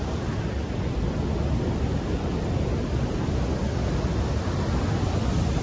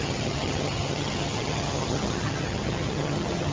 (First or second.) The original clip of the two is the first